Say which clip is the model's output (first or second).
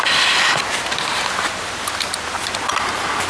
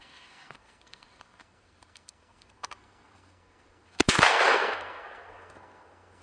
second